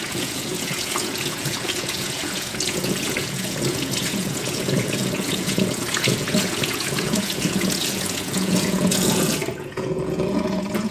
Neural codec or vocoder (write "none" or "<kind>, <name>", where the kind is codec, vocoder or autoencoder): vocoder, Vocos